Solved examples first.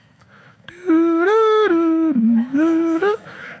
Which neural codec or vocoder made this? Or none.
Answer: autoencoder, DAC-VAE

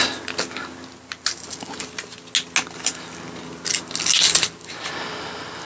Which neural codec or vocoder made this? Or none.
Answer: none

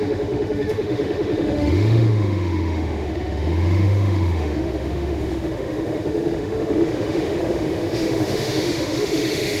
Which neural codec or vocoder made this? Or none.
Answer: autoencoder, DAC-VAE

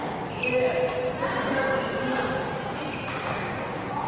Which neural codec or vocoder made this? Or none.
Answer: none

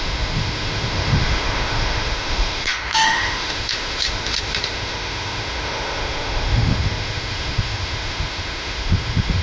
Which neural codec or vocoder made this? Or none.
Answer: autoencoder, DAC-VAE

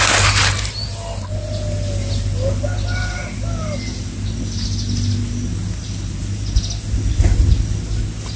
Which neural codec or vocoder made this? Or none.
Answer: none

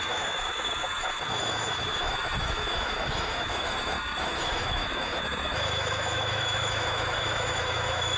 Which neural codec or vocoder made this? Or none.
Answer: autoencoder, DAC-VAE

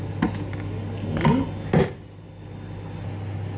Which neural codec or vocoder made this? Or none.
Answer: none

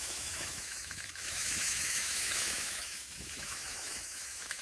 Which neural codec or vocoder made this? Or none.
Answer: autoencoder, DAC-VAE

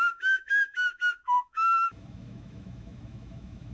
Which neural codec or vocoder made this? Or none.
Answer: autoencoder, DAC-VAE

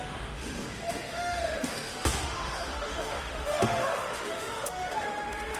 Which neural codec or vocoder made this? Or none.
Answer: autoencoder, DAC-VAE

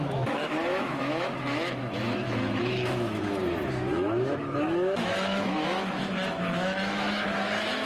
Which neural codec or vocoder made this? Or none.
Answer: autoencoder, DAC-VAE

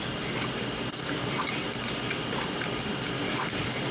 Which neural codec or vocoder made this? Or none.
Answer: none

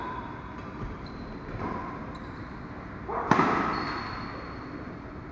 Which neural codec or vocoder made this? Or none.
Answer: none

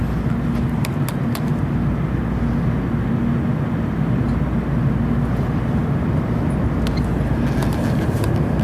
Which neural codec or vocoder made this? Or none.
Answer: none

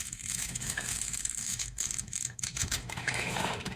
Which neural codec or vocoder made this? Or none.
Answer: autoencoder, DAC-VAE